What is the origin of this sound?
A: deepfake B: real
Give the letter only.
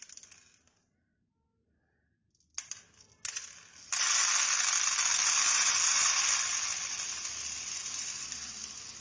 B